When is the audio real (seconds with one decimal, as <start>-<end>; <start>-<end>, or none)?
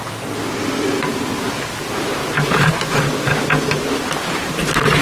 0.0-2.2; 2.7-5.0